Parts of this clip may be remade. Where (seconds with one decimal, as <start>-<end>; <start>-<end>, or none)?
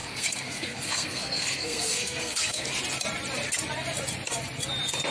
0.0-2.7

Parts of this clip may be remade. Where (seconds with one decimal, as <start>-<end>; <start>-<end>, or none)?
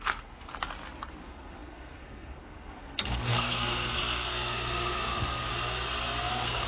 0.0-0.5; 1.1-5.5; 6.3-6.7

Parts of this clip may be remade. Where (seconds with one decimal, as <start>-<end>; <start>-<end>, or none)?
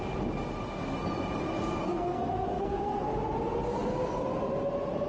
1.8-3.1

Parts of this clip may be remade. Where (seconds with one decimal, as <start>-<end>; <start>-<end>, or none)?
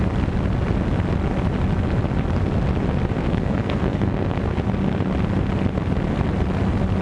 3.2-4.6